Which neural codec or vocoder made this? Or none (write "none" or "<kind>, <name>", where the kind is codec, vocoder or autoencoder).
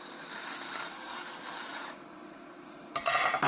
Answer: none